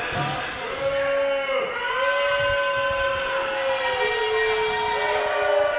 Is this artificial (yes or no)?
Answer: no